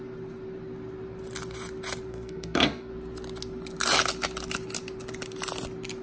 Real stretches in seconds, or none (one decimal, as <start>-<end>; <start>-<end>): 0.0-2.1; 2.9-6.0